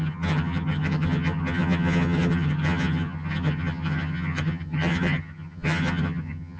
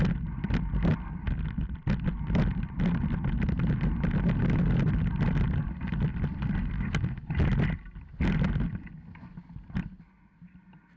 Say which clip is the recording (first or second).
second